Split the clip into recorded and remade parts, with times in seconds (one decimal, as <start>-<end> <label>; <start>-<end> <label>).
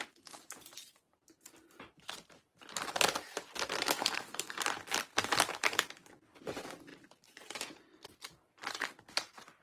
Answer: 0.0-4.0 recorded; 4.0-4.6 remade; 4.6-9.6 recorded